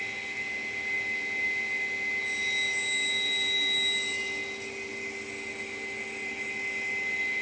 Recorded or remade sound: recorded